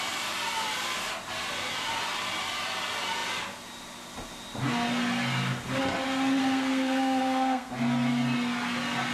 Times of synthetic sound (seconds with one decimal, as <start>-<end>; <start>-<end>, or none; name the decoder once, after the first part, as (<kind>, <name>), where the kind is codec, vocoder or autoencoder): 6.4-7.7 (codec, SNAC)